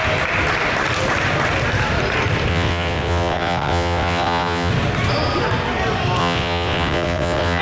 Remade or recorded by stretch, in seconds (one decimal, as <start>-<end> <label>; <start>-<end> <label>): 0.0-2.5 recorded; 2.5-4.7 remade; 4.7-6.2 recorded; 6.2-7.6 remade